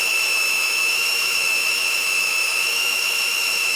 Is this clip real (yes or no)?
no